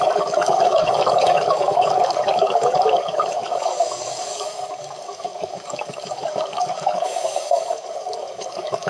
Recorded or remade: remade